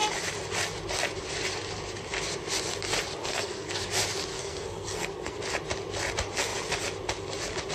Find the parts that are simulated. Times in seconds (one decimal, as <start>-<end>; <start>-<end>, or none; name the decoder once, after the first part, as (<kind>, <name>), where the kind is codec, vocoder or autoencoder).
3.2-3.8 (codec, SNAC); 4.3-5.4